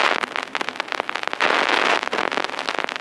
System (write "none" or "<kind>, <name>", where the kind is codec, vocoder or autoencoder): none